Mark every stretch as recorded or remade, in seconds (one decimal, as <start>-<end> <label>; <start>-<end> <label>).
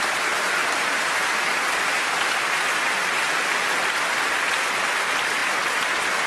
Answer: 0.0-6.3 recorded